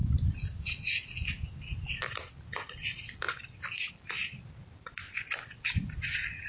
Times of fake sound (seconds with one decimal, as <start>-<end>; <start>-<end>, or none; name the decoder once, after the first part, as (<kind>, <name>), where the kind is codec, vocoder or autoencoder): none